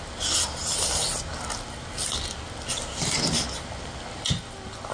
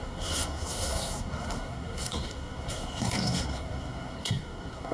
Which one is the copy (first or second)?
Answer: second